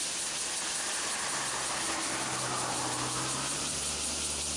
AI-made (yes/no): no